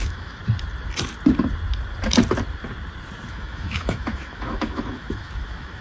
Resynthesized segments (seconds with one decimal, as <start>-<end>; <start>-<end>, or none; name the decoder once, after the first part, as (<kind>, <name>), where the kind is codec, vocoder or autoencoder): 0.0-0.4 (autoencoder, DAC-VAE); 3.3-5.8